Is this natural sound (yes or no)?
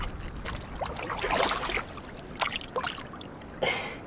yes